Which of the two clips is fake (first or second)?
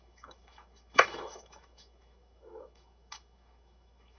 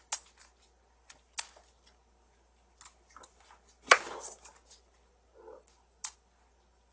first